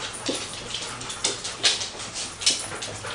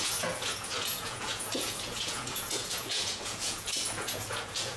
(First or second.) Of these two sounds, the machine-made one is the second